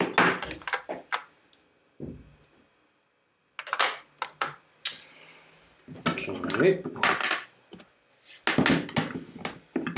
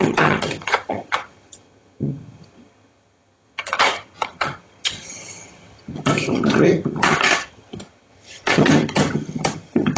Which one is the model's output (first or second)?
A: second